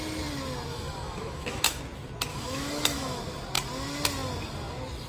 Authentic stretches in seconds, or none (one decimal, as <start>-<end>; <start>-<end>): 0.0-0.7; 1.8-2.3; 3.2-5.1